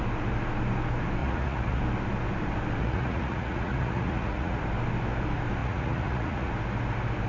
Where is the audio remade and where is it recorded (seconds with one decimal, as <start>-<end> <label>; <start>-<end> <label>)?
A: 0.0-1.2 recorded; 1.2-1.8 remade; 1.8-2.8 recorded; 2.8-4.6 remade; 4.6-5.6 recorded; 5.6-6.5 remade; 6.5-7.3 recorded